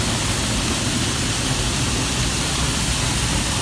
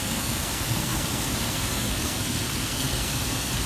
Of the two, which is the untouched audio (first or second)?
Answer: first